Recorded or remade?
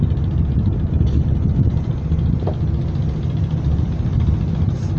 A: recorded